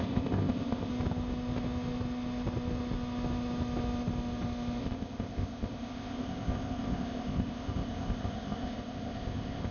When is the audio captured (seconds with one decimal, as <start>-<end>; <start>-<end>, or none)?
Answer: 0.9-4.8